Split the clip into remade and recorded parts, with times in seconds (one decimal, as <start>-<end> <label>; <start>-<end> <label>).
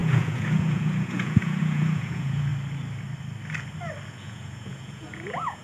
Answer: 0.0-2.5 remade; 2.5-4.1 recorded; 4.1-5.6 remade